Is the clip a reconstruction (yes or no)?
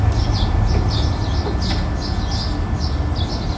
no